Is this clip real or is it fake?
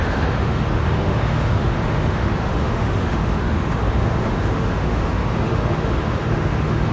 fake